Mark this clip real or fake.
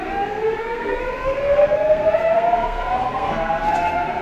fake